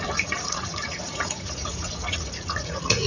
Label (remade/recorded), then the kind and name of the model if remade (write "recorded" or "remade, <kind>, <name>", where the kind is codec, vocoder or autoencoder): remade, vocoder, Vocos